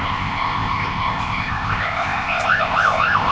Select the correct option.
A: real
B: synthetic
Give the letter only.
B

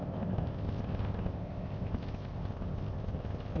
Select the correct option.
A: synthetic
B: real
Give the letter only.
A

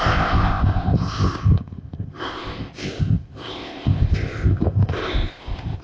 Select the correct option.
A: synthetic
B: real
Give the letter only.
A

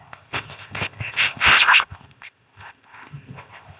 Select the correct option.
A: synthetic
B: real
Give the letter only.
A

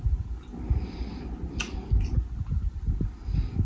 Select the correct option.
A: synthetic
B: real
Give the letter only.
B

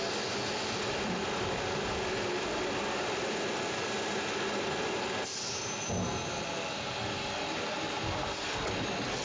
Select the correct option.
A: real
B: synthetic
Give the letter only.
A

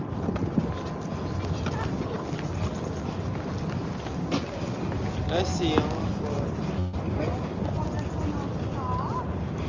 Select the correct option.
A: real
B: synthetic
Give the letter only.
A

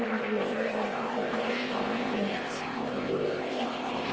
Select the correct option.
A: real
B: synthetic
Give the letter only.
B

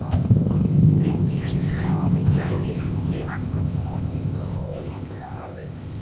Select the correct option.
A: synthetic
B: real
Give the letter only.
A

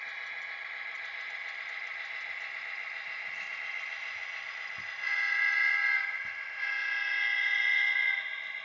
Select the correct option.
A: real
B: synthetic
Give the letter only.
A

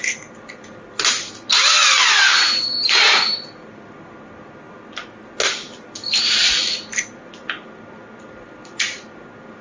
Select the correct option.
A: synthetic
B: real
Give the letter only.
B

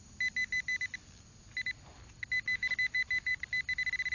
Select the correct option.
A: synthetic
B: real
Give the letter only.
B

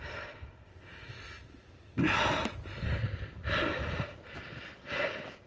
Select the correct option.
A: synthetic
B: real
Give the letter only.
B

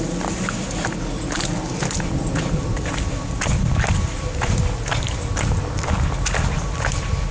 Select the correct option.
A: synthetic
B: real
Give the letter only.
B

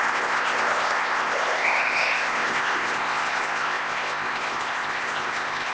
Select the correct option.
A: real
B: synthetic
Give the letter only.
B